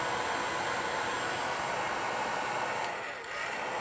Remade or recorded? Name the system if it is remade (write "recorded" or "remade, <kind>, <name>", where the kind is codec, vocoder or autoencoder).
recorded